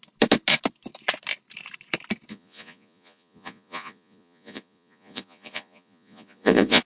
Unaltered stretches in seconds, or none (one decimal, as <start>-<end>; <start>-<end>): 0.0-2.3